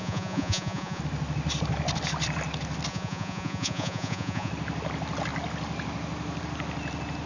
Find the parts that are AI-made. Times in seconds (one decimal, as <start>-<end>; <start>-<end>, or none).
0.0-1.0; 2.9-4.5